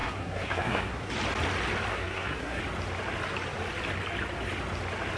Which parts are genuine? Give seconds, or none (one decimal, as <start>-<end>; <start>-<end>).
1.1-1.9; 2.6-5.2